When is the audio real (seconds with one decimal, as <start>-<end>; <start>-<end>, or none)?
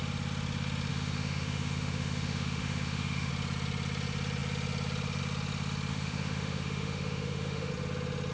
0.0-0.9; 3.3-5.9; 7.7-8.3